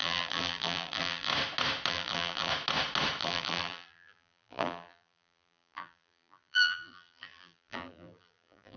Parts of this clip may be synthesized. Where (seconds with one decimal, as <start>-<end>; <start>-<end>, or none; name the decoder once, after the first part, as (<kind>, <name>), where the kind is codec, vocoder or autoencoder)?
0.0-1.3 (vocoder, BigVGAN v2); 1.9-2.5; 3.2-8.8